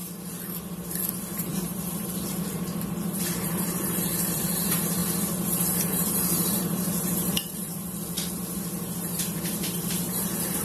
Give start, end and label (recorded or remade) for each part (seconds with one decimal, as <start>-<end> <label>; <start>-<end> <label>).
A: 0.0-1.1 recorded; 1.1-5.0 remade; 5.0-5.5 recorded; 5.5-7.8 remade; 7.8-9.0 recorded; 9.0-10.6 remade